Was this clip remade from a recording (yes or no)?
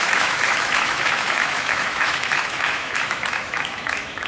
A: yes